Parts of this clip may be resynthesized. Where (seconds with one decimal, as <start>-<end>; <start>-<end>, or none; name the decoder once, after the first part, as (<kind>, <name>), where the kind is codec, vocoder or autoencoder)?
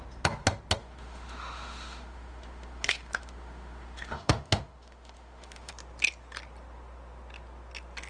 0.8-5.7 (autoencoder, DAC-VAE)